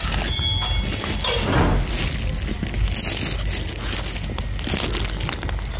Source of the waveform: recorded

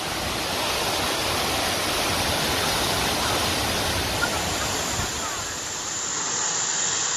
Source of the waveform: recorded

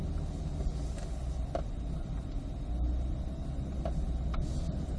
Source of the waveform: recorded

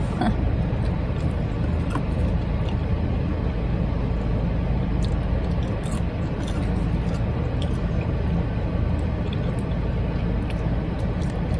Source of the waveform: recorded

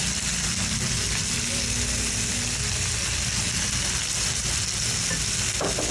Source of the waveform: recorded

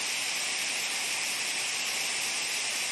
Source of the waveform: recorded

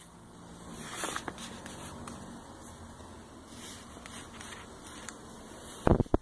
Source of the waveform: recorded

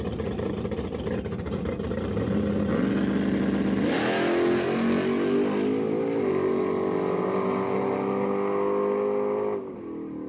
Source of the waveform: recorded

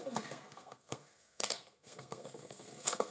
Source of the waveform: remade